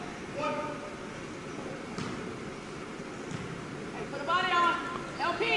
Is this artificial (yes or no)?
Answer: no